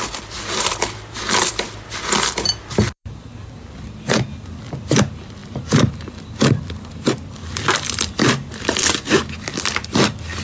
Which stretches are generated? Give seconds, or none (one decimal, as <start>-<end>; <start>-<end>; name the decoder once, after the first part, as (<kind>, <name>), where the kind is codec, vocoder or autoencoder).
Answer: 0.0-9.2 (vocoder, BigVGAN v2); 9.8-10.4

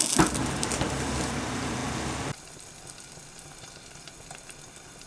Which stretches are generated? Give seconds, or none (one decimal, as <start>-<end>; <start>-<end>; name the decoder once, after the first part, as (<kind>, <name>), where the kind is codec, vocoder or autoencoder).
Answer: none

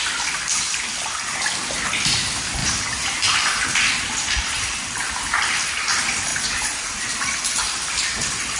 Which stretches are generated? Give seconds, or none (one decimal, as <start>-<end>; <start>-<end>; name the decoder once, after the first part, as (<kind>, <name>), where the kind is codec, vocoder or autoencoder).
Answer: 2.6-3.8 (vocoder, BigVGAN v2); 6.3-7.0

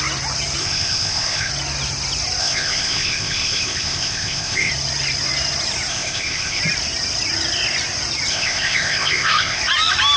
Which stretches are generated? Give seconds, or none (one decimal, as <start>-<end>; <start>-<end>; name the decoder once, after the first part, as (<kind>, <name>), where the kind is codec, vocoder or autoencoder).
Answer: 0.6-1.5 (codec, ZipCodec); 2.4-4.7; 5.9-6.6; 8.3-9.6

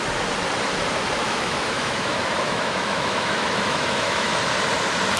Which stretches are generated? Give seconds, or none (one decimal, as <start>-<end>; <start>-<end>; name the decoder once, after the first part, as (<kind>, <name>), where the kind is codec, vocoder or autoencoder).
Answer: 1.2-4.3 (autoencoder, DAC-VAE)

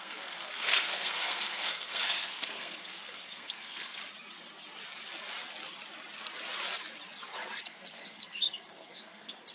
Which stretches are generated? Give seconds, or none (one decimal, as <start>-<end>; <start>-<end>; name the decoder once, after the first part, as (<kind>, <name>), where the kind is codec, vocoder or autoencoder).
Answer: 0.0-4.0 (codec, SNAC); 7.6-9.5

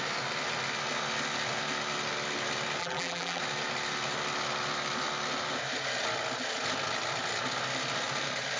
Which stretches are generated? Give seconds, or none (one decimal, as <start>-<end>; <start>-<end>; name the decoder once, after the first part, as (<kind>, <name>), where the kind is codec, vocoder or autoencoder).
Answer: 2.8-3.4 (vocoder, BigVGAN v2)

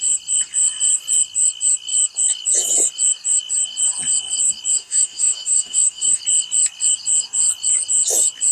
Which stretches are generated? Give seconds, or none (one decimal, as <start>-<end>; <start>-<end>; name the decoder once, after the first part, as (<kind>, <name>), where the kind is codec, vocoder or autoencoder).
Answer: 4.8-6.2 (autoencoder, DAC-VAE)